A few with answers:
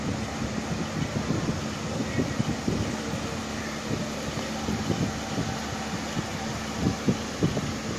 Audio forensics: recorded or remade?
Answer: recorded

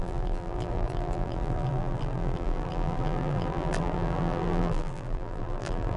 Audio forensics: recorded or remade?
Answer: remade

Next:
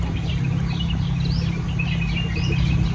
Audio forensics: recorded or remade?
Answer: recorded